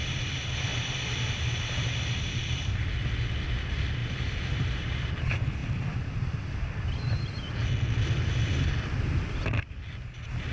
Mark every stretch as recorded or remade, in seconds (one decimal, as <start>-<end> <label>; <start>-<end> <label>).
0.0-0.7 recorded; 0.7-2.4 remade; 2.4-4.0 recorded; 4.0-5.1 remade; 5.1-10.5 recorded